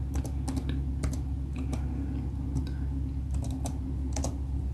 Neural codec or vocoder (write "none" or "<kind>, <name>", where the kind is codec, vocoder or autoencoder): none